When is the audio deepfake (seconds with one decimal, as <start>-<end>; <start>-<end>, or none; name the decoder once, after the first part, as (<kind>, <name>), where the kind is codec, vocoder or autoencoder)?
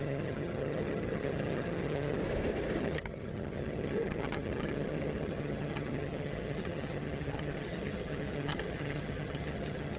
0.0-2.2 (vocoder, HiFi-GAN); 2.8-10.0